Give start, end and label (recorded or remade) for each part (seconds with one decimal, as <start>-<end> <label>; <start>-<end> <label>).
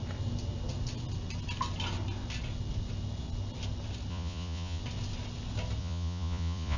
0.0-4.1 recorded; 4.1-4.8 remade; 4.8-5.8 recorded; 5.8-6.8 remade